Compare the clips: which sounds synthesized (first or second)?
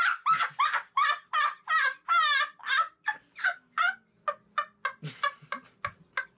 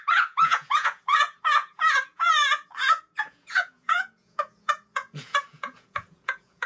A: second